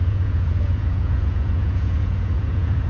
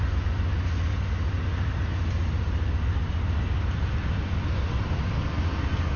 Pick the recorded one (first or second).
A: second